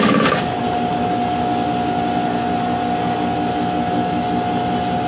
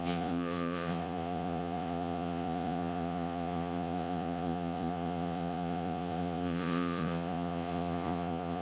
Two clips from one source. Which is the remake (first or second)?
second